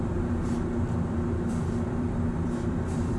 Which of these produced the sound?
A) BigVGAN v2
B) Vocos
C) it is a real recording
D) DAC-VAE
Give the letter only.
A